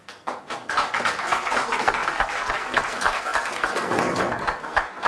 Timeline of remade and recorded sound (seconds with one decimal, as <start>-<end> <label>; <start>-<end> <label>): 0.0-5.1 remade